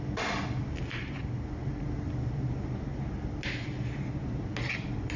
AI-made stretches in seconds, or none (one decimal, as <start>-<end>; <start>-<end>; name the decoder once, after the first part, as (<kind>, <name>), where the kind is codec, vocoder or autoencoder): none